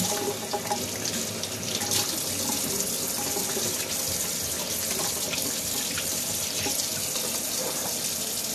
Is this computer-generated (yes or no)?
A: no